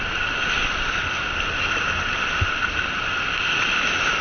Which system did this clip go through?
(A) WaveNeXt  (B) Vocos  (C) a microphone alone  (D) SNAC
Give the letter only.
C